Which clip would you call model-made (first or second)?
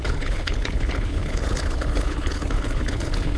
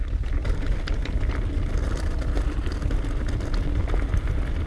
first